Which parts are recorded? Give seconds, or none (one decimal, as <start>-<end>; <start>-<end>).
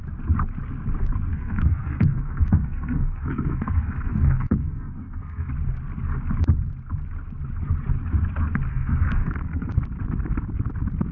0.0-1.3; 5.5-8.7; 9.7-11.1